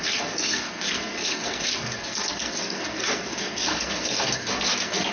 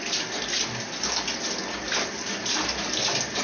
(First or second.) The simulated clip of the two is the first